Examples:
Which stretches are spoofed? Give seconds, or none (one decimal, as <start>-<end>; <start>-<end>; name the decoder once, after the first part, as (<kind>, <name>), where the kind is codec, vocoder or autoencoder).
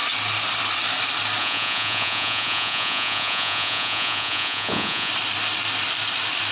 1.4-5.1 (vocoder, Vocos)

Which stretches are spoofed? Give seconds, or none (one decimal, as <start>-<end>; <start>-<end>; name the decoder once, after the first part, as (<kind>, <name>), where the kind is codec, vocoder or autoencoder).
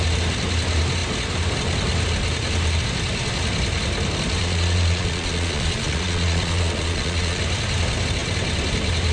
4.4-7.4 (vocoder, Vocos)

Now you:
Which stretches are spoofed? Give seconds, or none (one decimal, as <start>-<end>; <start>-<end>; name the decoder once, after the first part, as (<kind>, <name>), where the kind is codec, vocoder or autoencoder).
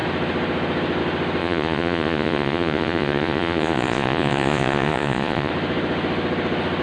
1.4-5.5 (vocoder, Vocos)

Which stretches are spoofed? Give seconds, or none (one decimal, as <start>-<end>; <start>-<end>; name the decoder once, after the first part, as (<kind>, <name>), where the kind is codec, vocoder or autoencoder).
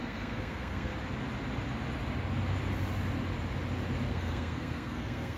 0.0-0.9 (codec, SNAC); 4.1-5.4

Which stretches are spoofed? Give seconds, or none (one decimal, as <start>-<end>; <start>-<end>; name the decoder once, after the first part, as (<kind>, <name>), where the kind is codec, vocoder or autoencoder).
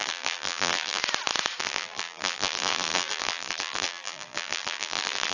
0.0-1.0 (vocoder, BigVGAN v2); 1.6-5.3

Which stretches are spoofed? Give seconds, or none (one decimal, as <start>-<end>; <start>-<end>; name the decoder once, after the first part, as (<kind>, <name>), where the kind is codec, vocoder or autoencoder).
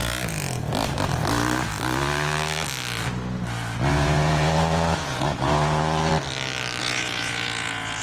3.9-6.1 (vocoder, Vocos); 6.8-8.0